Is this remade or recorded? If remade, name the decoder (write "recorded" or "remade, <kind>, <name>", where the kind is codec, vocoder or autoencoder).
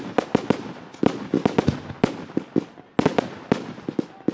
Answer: recorded